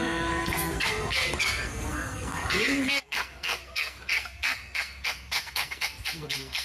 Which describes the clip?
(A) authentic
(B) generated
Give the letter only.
B